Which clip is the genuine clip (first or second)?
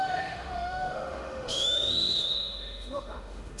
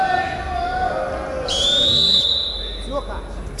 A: second